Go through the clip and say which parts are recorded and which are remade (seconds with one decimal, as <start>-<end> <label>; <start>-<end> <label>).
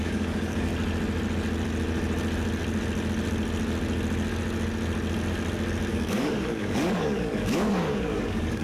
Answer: 0.0-0.7 remade; 0.7-5.9 recorded; 5.9-8.6 remade